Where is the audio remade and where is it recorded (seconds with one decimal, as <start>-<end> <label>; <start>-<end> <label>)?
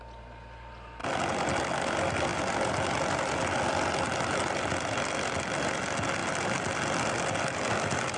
0.0-8.2 recorded